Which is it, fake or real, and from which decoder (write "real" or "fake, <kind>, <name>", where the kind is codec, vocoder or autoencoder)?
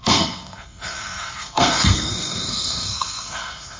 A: fake, codec, SNAC